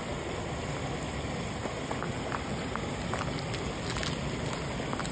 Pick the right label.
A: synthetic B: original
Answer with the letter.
B